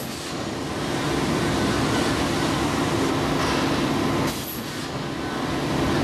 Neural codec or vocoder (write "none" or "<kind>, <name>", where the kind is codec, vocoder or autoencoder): none